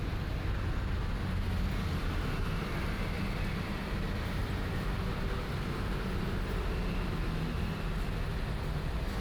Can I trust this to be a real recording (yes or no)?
yes